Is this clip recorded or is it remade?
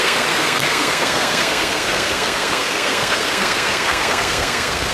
remade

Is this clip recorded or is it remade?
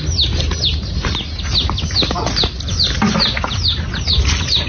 recorded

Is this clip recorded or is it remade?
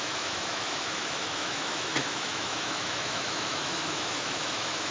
remade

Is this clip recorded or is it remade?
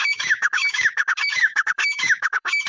remade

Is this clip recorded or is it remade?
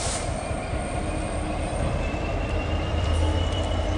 remade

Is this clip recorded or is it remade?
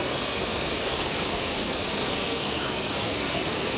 remade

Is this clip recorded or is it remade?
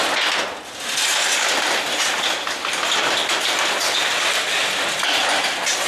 recorded